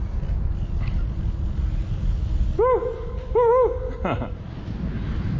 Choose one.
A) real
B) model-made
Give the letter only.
A